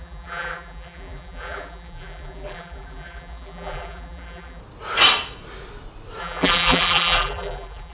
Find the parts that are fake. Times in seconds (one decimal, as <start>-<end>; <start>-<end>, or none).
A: 0.0-4.6; 6.2-7.9